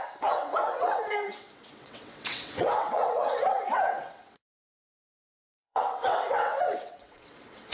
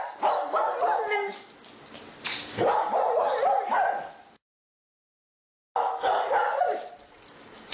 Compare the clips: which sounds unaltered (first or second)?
second